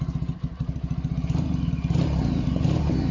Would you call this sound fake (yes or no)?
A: no